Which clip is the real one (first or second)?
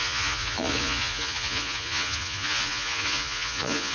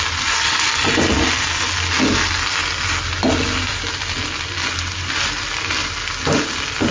second